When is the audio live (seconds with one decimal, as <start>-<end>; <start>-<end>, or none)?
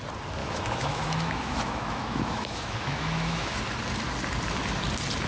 0.0-0.4; 3.6-5.3